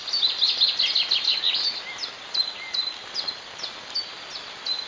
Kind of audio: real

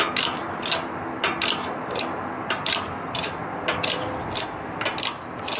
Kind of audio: real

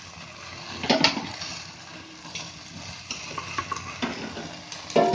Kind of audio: real